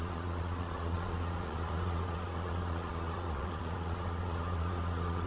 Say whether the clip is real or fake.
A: fake